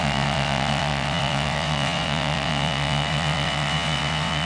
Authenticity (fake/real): fake